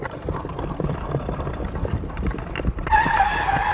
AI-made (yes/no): no